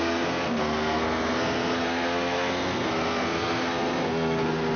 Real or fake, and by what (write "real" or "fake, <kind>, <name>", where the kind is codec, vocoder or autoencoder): fake, codec, SNAC